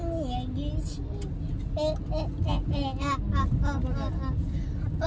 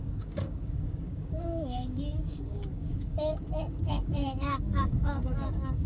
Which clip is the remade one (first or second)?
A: second